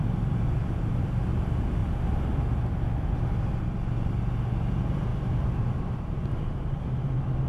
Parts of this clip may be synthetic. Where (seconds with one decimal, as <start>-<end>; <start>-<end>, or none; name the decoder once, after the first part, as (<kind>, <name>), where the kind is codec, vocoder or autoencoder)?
5.1-6.8 (vocoder, BigVGAN v2)